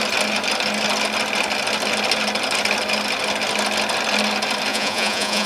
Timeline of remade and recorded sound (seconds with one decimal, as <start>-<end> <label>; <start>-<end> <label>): 0.0-4.7 recorded; 4.7-5.5 remade